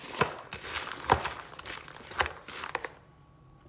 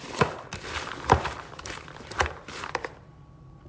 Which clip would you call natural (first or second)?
first